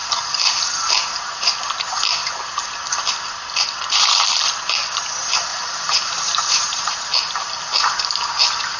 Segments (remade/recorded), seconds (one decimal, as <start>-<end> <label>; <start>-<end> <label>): 0.0-5.5 recorded; 5.5-7.1 remade; 7.1-8.8 recorded